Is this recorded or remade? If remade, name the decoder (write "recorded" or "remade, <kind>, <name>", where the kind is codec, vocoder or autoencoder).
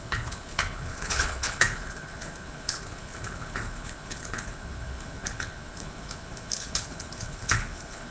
remade, codec, HILCodec